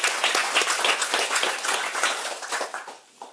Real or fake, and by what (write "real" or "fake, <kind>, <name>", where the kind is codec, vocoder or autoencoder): fake, vocoder, Vocos